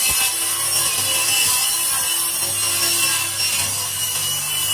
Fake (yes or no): no